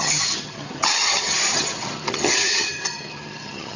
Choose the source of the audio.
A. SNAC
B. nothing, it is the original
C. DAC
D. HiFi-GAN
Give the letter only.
D